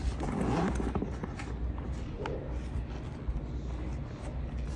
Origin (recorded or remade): recorded